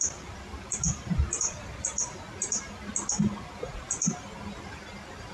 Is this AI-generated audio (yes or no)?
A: no